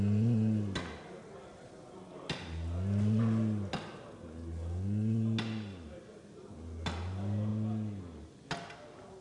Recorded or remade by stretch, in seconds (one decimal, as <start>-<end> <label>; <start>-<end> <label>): 0.0-9.2 recorded

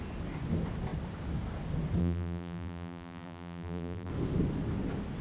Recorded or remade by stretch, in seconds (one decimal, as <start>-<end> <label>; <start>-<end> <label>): 0.0-2.0 recorded; 2.0-4.1 remade; 4.1-5.2 recorded

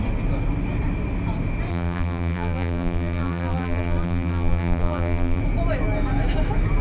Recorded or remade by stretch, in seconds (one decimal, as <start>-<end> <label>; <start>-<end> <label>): 0.0-1.7 recorded; 1.7-5.4 remade; 5.4-6.8 recorded

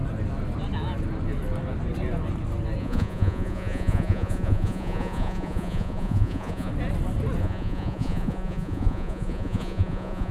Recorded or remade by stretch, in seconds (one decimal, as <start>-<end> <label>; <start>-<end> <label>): 0.0-2.8 recorded; 2.8-6.7 remade; 6.7-7.4 recorded; 7.4-10.3 remade

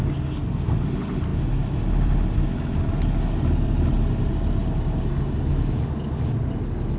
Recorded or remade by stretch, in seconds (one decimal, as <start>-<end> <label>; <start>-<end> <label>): 0.0-7.0 recorded

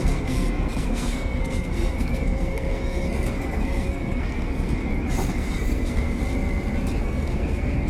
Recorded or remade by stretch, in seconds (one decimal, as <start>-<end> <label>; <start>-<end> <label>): 0.0-4.8 remade; 4.8-5.3 recorded; 5.3-6.2 remade; 6.2-7.0 recorded; 7.0-7.9 remade